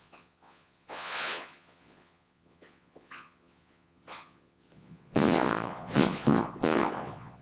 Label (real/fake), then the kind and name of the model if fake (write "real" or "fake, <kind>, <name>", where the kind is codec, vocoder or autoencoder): fake, vocoder, Vocos